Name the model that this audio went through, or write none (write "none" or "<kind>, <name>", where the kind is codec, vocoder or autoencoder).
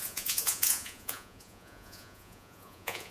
vocoder, Vocos